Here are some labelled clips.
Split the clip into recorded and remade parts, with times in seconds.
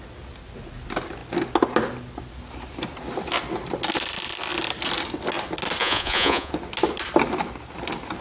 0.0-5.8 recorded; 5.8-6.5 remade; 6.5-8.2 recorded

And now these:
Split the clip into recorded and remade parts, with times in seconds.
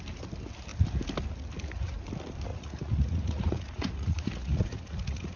0.0-2.5 recorded; 2.5-5.4 remade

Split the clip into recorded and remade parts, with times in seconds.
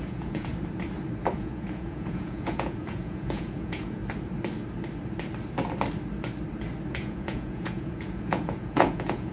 0.0-0.5 remade; 0.5-1.3 recorded; 1.3-4.0 remade; 4.0-6.9 recorded; 6.9-9.3 remade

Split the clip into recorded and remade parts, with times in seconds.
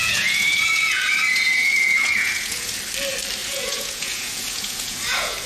0.0-2.8 remade; 2.8-3.4 recorded; 3.4-5.5 remade